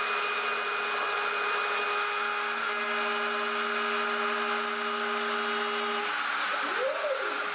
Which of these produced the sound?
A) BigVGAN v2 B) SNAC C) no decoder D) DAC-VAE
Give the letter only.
C